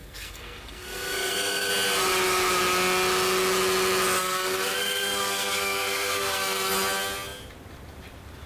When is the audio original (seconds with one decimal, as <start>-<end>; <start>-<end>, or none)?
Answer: 1.7-4.2; 6.7-8.5